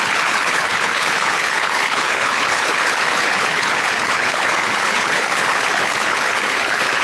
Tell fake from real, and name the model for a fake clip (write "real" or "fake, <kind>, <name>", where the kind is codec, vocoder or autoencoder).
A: fake, codec, HILCodec